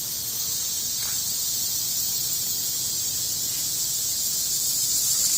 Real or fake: fake